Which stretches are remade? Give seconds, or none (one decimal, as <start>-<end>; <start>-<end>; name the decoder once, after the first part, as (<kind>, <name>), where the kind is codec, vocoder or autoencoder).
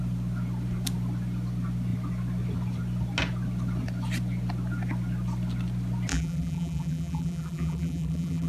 6.1-8.5 (vocoder, BigVGAN v2)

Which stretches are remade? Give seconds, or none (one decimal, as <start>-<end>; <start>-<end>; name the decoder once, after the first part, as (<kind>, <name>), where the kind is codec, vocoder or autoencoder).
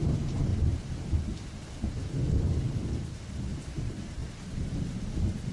0.0-4.2 (vocoder, BigVGAN v2)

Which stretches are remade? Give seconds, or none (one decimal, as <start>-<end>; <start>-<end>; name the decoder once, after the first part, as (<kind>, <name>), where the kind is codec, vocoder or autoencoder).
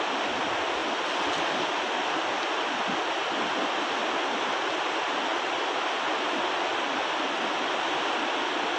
none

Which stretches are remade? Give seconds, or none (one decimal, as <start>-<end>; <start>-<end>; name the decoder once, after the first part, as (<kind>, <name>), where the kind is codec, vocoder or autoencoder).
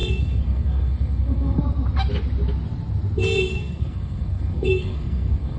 0.0-1.6 (codec, SNAC); 3.5-5.6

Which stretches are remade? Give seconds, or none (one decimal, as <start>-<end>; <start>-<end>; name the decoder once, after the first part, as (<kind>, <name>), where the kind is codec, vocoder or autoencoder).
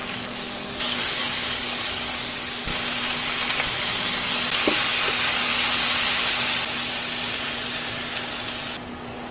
0.0-2.7 (codec, DAC); 4.7-5.5; 8.8-9.3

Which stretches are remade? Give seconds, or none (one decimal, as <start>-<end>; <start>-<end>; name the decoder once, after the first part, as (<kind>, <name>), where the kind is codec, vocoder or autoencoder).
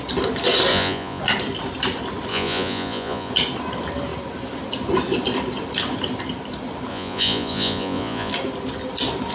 0.7-1.2 (vocoder, Vocos); 2.3-3.3; 6.9-8.3